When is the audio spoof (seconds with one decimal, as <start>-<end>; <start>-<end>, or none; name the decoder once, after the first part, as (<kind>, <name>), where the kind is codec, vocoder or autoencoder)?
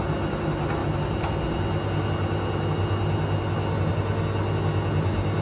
none